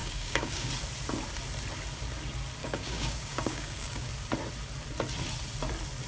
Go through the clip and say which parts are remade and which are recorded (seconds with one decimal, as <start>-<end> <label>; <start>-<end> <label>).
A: 0.0-0.7 remade; 0.7-2.6 recorded; 2.6-4.1 remade; 4.1-6.1 recorded